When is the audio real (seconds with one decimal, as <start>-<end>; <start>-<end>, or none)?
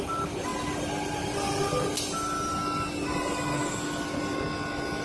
0.0-3.5; 4.2-5.0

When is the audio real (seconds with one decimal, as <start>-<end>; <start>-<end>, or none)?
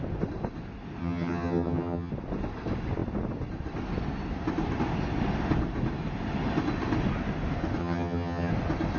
0.0-1.0; 2.1-7.8; 8.5-9.0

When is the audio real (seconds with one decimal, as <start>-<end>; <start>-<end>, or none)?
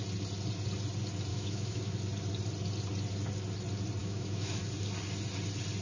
0.0-1.3; 1.8-4.0; 4.6-5.8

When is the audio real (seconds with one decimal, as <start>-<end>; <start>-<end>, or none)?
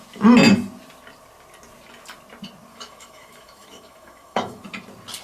0.0-2.7; 4.6-5.2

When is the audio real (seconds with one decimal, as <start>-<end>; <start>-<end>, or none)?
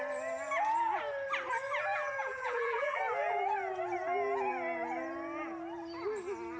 0.0-2.3; 3.0-6.6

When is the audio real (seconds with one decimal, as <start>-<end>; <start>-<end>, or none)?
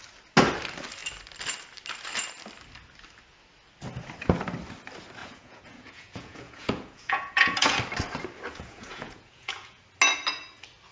0.0-5.2; 7.8-8.5; 9.8-10.9